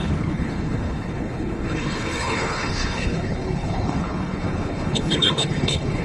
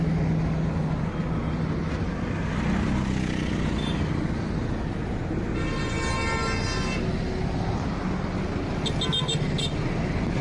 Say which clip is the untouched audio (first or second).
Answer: second